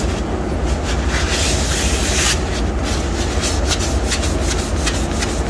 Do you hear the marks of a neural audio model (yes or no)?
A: no